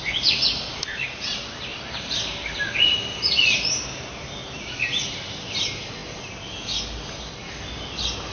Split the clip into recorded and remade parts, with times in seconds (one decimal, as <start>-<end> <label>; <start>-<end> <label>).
0.0-8.3 recorded